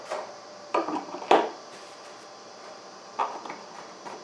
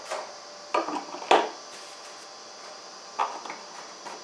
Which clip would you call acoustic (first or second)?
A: second